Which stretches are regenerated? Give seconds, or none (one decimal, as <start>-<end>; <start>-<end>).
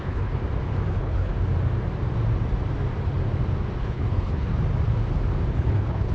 0.0-0.4; 0.9-1.3; 3.8-4.5; 5.5-6.1